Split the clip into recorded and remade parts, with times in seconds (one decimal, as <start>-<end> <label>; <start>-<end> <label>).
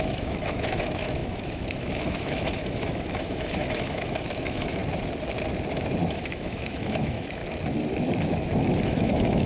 0.0-4.8 remade; 4.8-6.1 recorded; 6.1-7.4 remade; 7.4-8.8 recorded; 8.8-9.5 remade